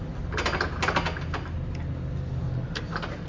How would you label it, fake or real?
real